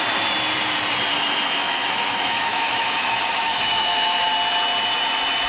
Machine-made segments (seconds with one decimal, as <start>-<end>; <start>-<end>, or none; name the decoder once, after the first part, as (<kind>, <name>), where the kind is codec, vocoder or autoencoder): 1.1-4.3 (autoencoder, DAC-VAE)